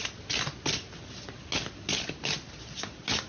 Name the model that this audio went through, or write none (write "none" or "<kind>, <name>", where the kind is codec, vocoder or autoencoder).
none